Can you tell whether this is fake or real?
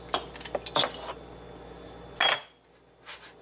real